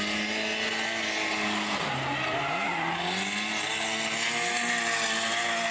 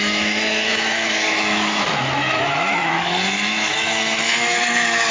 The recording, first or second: first